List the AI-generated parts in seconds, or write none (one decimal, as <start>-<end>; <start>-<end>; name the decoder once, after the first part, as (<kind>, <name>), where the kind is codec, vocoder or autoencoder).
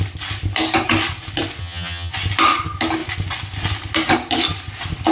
1.6-2.1 (vocoder, HiFi-GAN)